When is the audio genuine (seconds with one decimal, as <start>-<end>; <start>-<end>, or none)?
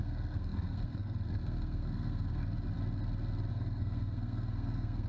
2.4-3.5